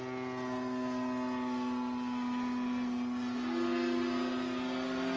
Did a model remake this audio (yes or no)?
no